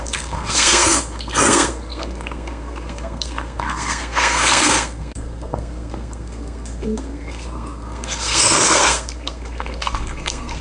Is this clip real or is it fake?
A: fake